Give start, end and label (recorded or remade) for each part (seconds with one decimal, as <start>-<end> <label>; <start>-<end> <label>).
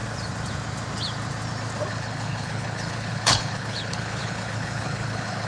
0.0-1.9 recorded; 1.9-5.5 remade